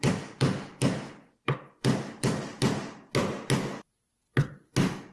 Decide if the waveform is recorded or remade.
recorded